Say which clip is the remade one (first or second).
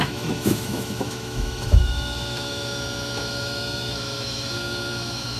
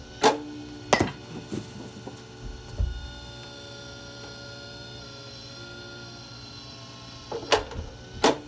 first